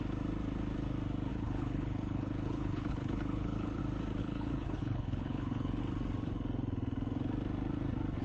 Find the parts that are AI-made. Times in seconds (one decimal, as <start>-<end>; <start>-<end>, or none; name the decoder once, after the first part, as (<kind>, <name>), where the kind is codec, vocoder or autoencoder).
1.3-3.8 (codec, HILCodec); 4.2-5.8